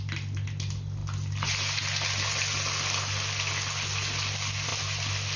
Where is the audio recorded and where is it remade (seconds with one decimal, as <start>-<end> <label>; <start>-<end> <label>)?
0.0-5.4 recorded